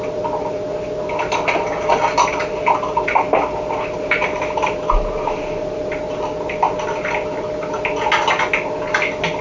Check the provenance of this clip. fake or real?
real